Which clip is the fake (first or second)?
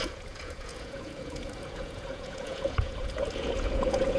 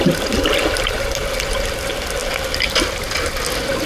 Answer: first